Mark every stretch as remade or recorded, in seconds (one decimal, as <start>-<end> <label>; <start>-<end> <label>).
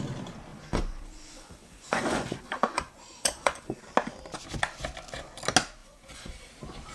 0.0-0.5 recorded; 0.5-3.8 remade; 3.8-5.8 recorded; 5.8-6.5 remade; 6.5-6.9 recorded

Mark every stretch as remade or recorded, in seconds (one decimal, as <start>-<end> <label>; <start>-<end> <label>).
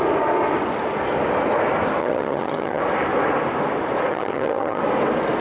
0.0-2.0 recorded; 2.0-2.8 remade; 2.8-4.1 recorded; 4.1-4.8 remade; 4.8-5.4 recorded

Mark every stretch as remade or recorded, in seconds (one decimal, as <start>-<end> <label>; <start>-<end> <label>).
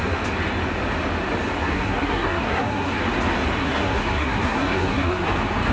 0.0-1.6 recorded; 1.6-3.0 remade; 3.0-3.6 recorded; 3.6-5.3 remade; 5.3-5.7 recorded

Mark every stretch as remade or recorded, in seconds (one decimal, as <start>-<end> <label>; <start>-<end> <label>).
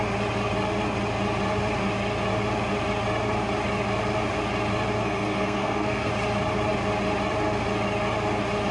0.0-5.0 recorded; 5.0-6.1 remade; 6.1-8.7 recorded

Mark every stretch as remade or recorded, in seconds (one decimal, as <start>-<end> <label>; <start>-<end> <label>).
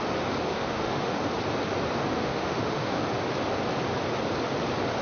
0.0-0.5 recorded; 0.5-1.2 remade; 1.2-2.1 recorded; 2.1-3.0 remade; 3.0-5.0 recorded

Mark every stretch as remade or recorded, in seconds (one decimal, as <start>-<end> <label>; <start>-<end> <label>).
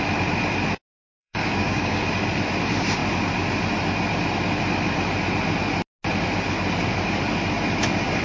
0.0-1.2 recorded; 1.2-2.1 remade; 2.1-8.2 recorded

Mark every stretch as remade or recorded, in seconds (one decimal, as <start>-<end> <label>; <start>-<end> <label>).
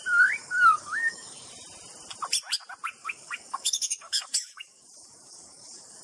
0.0-0.4 recorded; 0.4-1.5 remade; 1.5-3.0 recorded; 3.0-6.0 remade